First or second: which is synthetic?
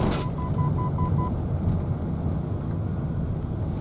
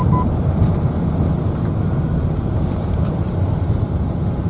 second